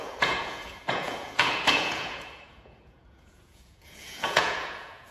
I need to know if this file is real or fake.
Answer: fake